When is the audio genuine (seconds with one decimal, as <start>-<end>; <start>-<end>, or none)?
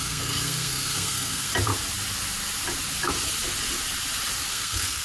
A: 1.5-4.5